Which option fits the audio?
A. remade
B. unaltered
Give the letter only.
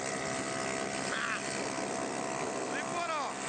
B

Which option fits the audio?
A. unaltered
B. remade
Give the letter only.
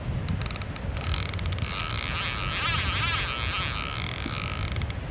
A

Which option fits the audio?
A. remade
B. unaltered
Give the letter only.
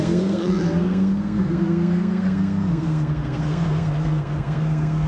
A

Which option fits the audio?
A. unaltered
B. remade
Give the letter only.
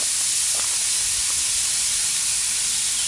A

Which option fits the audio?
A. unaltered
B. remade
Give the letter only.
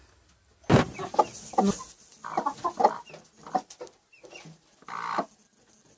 A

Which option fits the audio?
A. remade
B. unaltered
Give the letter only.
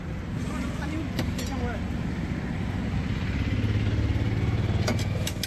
B